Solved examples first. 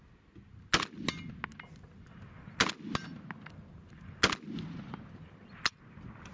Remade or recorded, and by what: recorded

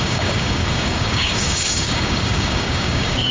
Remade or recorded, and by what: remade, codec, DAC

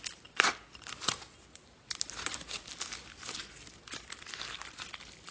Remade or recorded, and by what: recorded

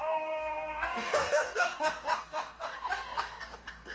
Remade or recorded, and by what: remade, codec, DAC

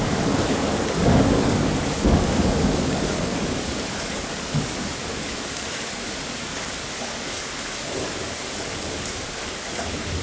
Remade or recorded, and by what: remade, codec, DAC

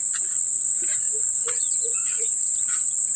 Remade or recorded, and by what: recorded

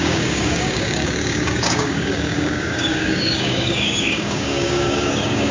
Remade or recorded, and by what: remade, codec, DAC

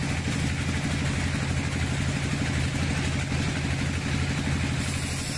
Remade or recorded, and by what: recorded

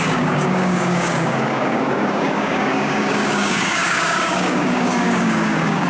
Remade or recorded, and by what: remade, codec, DAC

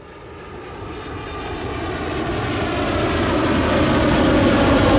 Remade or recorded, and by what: recorded